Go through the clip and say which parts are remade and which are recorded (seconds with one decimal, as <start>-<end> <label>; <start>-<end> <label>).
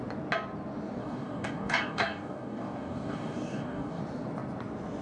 0.0-1.0 recorded; 1.0-4.0 remade; 4.0-5.0 recorded